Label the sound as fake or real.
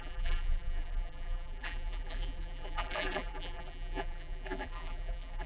fake